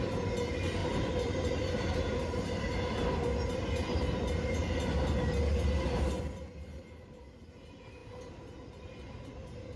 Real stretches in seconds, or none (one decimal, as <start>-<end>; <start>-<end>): 0.0-0.8; 1.6-9.8